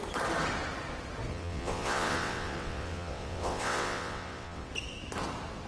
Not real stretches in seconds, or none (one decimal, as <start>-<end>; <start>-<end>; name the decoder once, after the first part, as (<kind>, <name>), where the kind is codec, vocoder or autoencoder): 1.3-4.7 (vocoder, WaveNeXt)